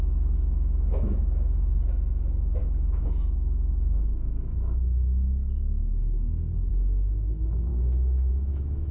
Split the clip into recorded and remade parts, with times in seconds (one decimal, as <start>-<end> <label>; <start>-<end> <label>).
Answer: 0.0-7.7 remade; 7.7-8.3 recorded; 8.3-8.9 remade